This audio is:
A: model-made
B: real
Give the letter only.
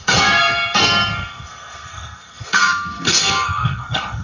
A